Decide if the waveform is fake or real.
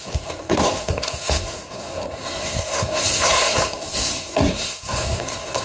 fake